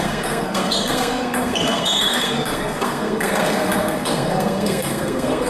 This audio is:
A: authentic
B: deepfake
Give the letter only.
B